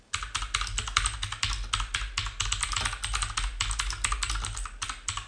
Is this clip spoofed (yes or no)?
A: no